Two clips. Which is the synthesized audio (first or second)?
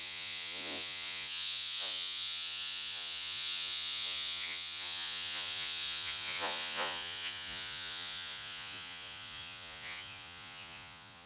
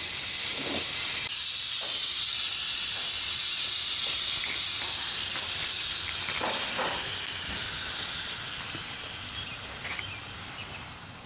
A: first